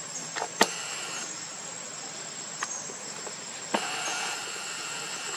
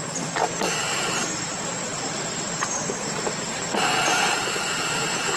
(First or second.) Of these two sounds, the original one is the first